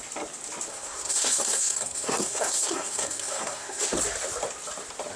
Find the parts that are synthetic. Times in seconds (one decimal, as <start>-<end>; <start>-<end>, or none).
0.7-3.8